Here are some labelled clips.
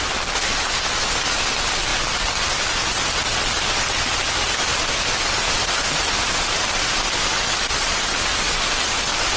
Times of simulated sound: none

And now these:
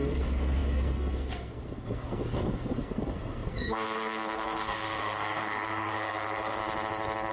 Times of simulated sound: 0.0-6.6 (codec, SNAC)

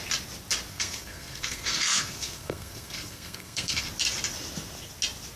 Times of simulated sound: 0.7-3.9 (codec, SNAC)

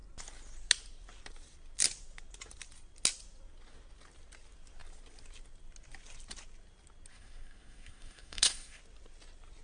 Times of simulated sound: 7.1-8.8 (codec, SNAC)